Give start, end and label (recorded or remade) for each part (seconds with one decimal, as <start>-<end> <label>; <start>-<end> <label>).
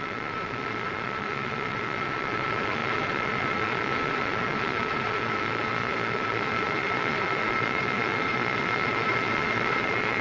0.0-10.2 remade